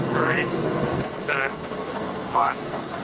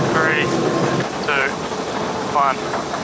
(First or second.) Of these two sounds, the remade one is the first